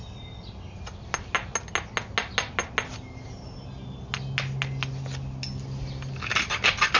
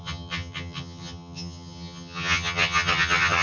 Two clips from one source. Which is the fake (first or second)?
second